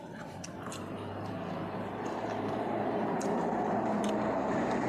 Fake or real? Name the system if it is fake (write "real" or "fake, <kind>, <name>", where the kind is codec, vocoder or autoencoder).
fake, vocoder, BigVGAN v2